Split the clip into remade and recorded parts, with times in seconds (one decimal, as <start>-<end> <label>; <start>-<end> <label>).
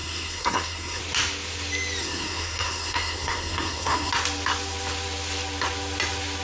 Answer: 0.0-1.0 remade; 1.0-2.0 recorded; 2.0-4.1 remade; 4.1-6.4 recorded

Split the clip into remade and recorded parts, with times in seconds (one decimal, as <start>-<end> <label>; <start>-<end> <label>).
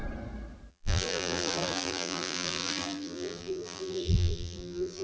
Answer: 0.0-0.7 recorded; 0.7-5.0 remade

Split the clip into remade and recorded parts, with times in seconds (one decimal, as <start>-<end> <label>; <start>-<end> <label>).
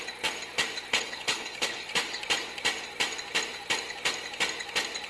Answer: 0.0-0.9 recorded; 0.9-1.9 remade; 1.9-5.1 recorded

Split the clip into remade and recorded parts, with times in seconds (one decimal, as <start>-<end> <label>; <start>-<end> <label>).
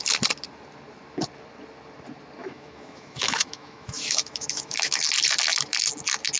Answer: 0.0-2.4 recorded; 2.4-5.0 remade; 5.0-6.4 recorded